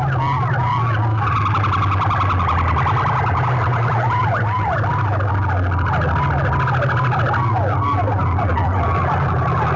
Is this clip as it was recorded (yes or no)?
yes